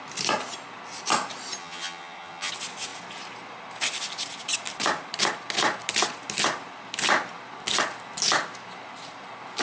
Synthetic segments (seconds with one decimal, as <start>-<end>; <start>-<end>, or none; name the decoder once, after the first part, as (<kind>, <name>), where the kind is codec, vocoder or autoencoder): 1.6-2.5 (vocoder, HiFi-GAN)